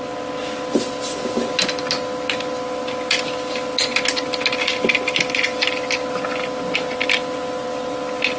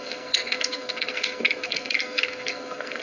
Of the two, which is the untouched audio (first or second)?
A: first